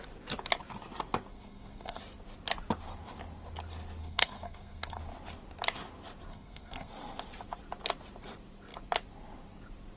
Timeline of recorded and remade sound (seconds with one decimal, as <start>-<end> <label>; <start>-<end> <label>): 0.0-1.3 recorded; 1.3-2.0 remade; 2.0-4.0 recorded; 4.0-5.0 remade; 5.0-6.3 recorded; 6.3-6.9 remade; 6.9-10.0 recorded